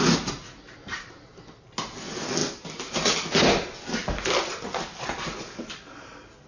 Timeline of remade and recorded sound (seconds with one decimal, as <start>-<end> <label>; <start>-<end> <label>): 0.0-6.5 recorded